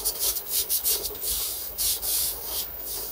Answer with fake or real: fake